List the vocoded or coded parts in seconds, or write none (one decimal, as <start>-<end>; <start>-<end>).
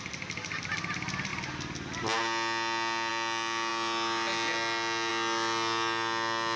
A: none